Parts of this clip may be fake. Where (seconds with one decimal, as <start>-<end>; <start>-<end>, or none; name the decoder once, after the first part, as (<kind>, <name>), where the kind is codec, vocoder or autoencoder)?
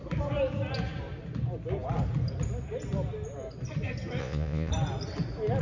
4.2-4.7 (vocoder, Vocos)